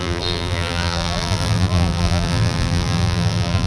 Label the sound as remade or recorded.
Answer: remade